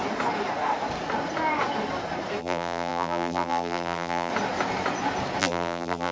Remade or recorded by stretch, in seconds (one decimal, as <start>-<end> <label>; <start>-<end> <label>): 0.0-2.4 recorded; 2.4-4.3 remade; 4.3-5.4 recorded; 5.4-6.1 remade